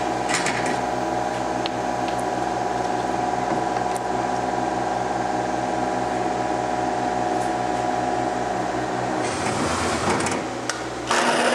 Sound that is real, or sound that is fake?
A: real